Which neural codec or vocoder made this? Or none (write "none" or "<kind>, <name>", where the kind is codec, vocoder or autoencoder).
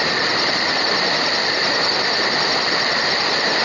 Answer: vocoder, BigVGAN v2